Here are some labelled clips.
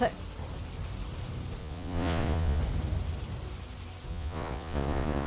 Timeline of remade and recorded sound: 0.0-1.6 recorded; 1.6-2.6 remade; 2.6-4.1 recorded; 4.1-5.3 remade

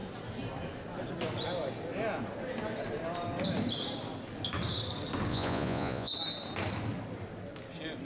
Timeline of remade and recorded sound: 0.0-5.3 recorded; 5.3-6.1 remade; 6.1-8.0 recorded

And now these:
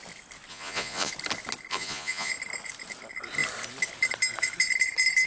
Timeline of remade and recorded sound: 0.0-0.5 recorded; 0.5-1.1 remade; 1.1-1.7 recorded; 1.7-2.3 remade; 2.3-5.3 recorded

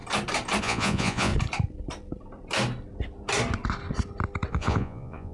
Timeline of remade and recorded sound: 0.0-0.6 recorded; 0.6-1.3 remade; 1.3-4.5 recorded; 4.5-5.3 remade

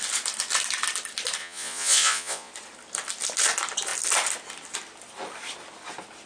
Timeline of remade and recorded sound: 0.0-1.4 recorded; 1.4-2.5 remade; 2.5-6.3 recorded

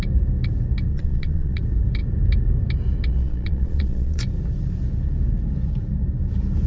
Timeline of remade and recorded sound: 0.0-0.9 recorded; 0.9-1.6 remade; 1.6-3.1 recorded; 3.1-4.2 remade; 4.2-6.7 recorded

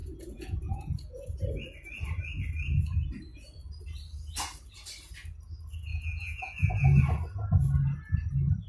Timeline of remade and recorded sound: 0.0-1.4 remade; 1.4-3.3 recorded; 3.3-3.8 remade; 3.8-5.9 recorded; 5.9-7.0 remade; 7.0-8.7 recorded